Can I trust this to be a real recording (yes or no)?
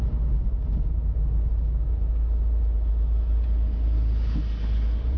yes